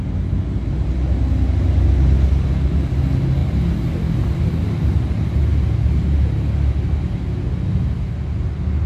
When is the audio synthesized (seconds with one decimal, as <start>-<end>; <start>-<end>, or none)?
none